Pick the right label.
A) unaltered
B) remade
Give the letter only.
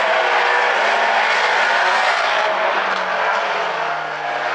A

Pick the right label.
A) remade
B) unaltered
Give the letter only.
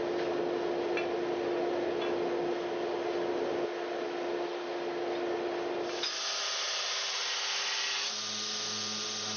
B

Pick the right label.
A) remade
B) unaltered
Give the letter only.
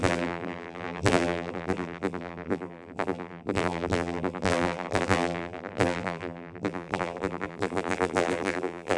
A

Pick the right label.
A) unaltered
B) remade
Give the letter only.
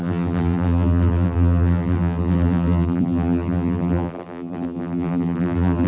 B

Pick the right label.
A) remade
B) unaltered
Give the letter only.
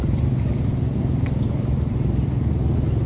A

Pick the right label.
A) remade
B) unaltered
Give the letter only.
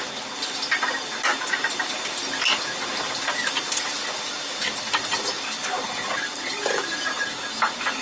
B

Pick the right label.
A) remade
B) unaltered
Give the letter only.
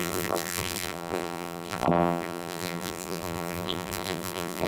A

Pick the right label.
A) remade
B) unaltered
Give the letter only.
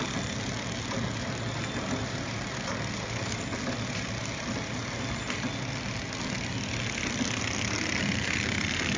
B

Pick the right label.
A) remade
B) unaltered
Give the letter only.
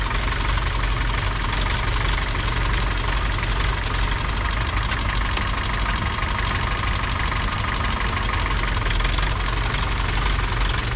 B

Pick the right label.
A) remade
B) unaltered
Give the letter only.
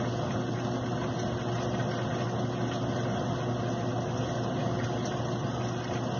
B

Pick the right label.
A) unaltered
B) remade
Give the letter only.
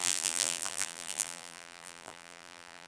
B